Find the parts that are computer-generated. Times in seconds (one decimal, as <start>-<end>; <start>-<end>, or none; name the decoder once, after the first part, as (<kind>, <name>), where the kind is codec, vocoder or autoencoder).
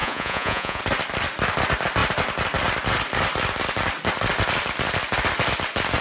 0.0-0.8 (vocoder, Vocos)